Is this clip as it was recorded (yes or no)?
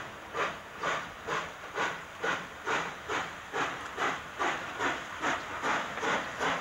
yes